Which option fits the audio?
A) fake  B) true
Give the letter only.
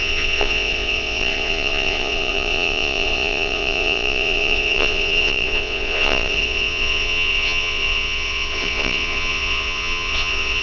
A